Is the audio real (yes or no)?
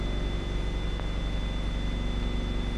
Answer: no